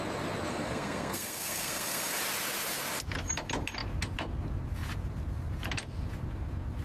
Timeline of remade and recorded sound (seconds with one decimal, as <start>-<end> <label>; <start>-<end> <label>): 0.0-0.5 recorded; 0.5-2.2 remade; 2.2-6.8 recorded